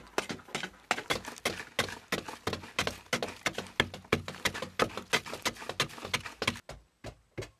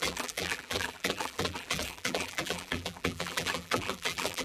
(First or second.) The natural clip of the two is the first